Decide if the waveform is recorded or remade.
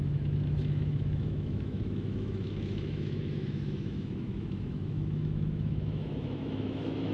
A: remade